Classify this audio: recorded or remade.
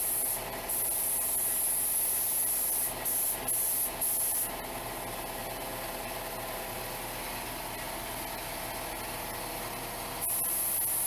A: recorded